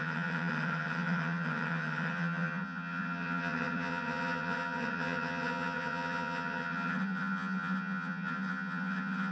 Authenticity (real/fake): fake